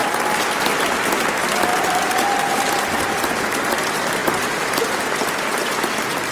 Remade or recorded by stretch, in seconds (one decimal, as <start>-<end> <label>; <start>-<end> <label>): 0.0-6.3 recorded